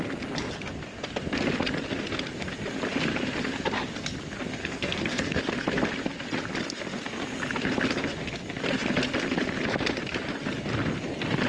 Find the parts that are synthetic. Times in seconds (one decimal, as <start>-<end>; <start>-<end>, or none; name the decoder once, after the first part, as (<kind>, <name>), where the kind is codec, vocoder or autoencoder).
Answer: 4.6-5.4 (codec, SNAC)